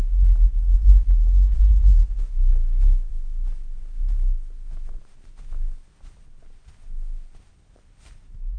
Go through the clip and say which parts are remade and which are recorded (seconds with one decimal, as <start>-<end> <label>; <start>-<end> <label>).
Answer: 0.0-8.6 recorded